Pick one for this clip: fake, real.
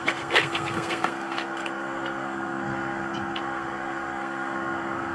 fake